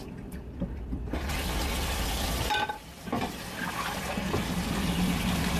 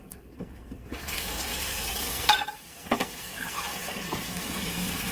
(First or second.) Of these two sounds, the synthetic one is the second